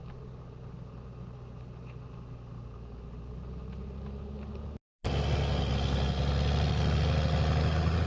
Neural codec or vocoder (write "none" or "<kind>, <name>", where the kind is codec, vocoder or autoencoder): none